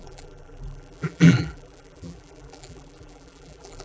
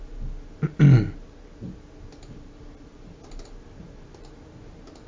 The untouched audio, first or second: second